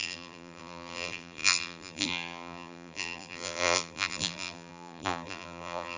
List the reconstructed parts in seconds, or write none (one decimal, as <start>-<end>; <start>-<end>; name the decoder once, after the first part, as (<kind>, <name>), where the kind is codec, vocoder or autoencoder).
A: 0.0-6.0 (vocoder, BigVGAN v2)